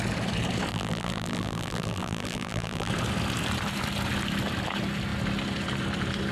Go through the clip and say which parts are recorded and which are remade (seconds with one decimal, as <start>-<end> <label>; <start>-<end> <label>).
0.0-0.7 recorded; 0.7-2.9 remade; 2.9-6.3 recorded